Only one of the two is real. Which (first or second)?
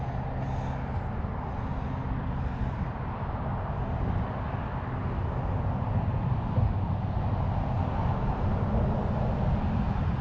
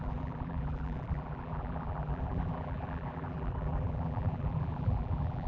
first